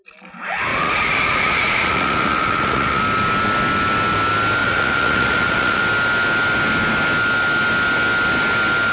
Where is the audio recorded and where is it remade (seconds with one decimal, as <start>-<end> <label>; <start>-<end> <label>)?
0.0-0.7 recorded; 0.7-3.0 remade; 3.0-4.6 recorded; 4.6-5.8 remade; 5.8-8.9 recorded